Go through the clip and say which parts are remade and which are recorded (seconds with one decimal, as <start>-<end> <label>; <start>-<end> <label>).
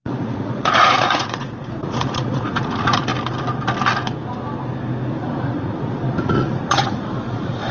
0.0-3.1 remade; 3.1-5.1 recorded; 5.1-7.7 remade